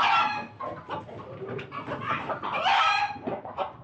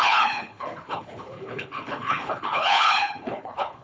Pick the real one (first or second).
first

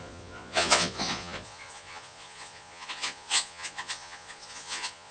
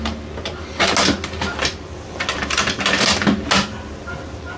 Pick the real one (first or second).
second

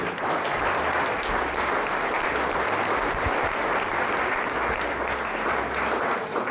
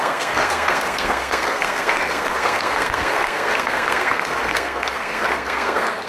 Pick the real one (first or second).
first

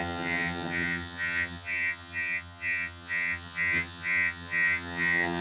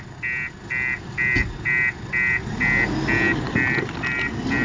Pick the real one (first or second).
second